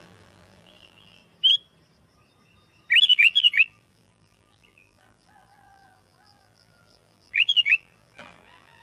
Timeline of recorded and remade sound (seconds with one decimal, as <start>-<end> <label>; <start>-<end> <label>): 0.0-1.2 remade; 1.2-3.0 recorded; 3.0-8.8 remade